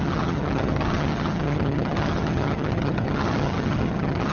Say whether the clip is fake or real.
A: fake